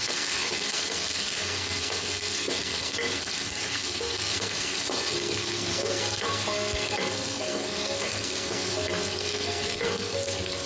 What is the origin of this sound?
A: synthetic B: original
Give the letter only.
A